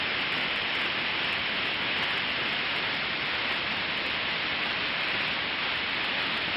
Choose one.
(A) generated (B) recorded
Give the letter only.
B